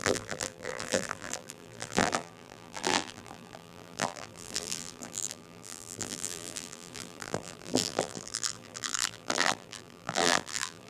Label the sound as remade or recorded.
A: remade